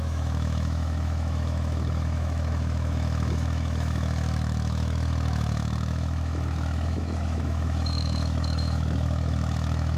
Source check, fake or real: fake